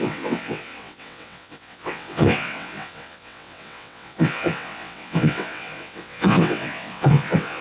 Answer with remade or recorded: remade